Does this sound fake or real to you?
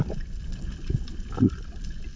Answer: real